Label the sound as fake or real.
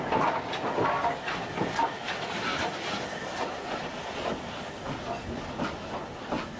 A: real